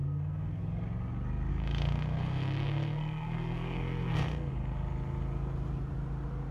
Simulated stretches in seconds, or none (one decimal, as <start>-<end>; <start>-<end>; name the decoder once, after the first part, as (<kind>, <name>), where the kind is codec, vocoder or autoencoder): 0.0-0.6 (codec, SNAC); 1.5-4.5